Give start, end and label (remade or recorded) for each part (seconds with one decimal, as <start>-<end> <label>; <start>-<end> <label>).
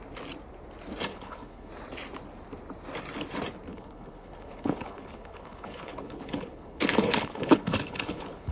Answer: 0.0-1.1 recorded; 1.1-1.7 remade; 1.7-3.7 recorded; 3.7-8.5 remade